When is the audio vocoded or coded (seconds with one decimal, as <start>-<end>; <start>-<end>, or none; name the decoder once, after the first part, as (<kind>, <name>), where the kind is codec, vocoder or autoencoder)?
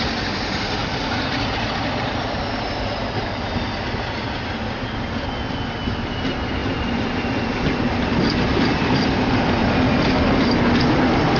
6.6-9.5 (vocoder, BigVGAN v2)